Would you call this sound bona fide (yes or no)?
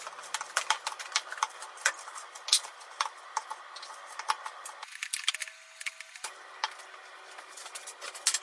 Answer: yes